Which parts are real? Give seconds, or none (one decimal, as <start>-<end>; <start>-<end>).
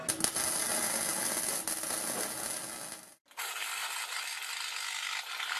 0.0-5.6